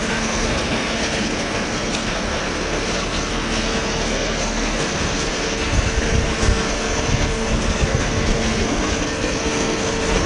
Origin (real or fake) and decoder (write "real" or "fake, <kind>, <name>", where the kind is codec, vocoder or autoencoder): fake, codec, SNAC